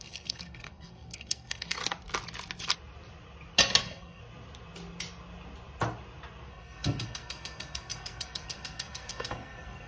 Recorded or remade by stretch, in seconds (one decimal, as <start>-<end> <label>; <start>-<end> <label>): 0.0-1.8 remade; 1.8-3.8 recorded; 3.8-4.2 remade; 4.2-6.5 recorded; 6.5-9.9 remade